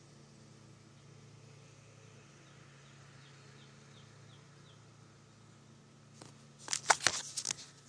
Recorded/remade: recorded